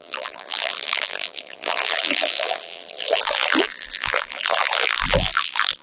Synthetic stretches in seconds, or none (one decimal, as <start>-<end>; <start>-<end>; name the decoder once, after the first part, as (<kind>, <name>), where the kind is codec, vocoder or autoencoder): 0.0-5.8 (vocoder, BigVGAN v2)